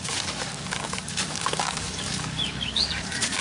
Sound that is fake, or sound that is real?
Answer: fake